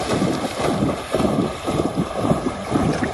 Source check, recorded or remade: remade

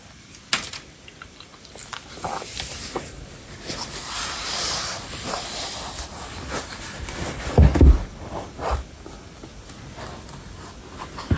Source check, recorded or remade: recorded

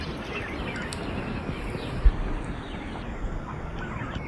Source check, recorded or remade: recorded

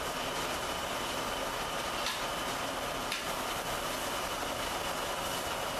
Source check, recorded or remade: recorded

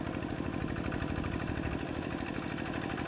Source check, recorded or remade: remade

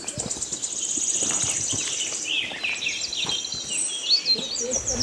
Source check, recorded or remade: recorded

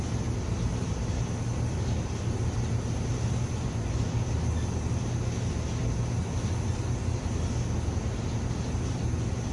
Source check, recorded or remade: recorded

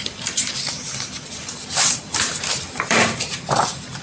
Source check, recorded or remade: remade